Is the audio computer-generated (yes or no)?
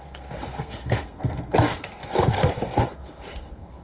yes